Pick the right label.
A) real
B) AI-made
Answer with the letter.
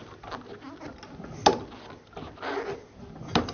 A